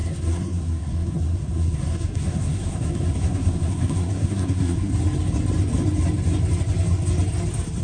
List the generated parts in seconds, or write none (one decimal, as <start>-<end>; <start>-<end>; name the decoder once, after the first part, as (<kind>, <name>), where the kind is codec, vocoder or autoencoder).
0.0-4.9 (codec, SNAC)